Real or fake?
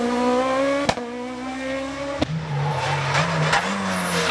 real